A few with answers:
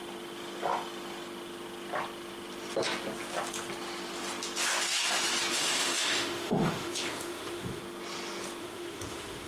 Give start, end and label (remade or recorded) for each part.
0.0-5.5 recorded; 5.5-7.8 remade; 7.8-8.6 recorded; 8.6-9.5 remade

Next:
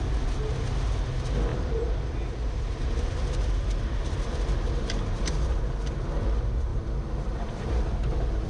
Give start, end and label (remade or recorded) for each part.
0.0-1.5 recorded; 1.5-3.5 remade; 3.5-6.7 recorded; 6.7-7.7 remade; 7.7-8.5 recorded

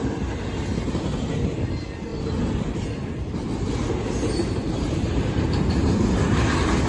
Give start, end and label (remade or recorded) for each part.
0.0-6.9 recorded

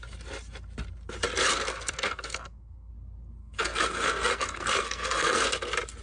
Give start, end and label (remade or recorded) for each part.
0.0-1.7 recorded; 1.7-2.9 remade; 2.9-3.4 recorded; 3.4-5.5 remade; 5.5-6.0 recorded

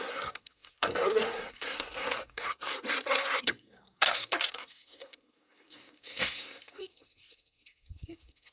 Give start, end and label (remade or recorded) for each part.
0.0-8.5 remade

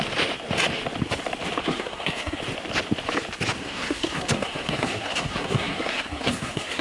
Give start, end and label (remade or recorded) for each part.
0.0-1.6 recorded; 1.6-2.4 remade; 2.4-3.6 recorded; 3.6-6.8 remade

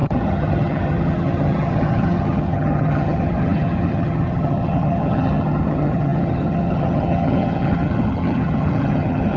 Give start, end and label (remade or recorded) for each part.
0.0-9.4 remade

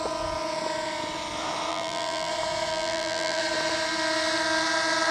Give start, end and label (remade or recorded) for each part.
0.0-1.7 recorded; 1.7-2.3 remade; 2.3-2.7 recorded; 2.7-3.4 remade; 3.4-5.1 recorded